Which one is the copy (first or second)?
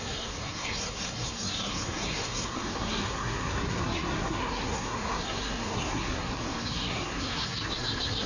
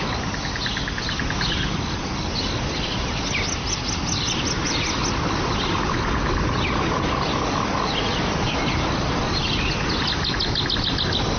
first